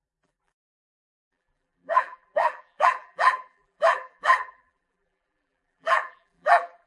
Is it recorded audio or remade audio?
remade